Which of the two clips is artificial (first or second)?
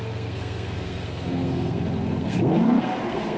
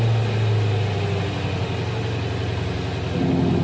first